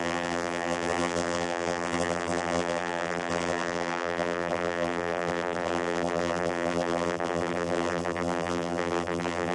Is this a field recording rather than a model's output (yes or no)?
no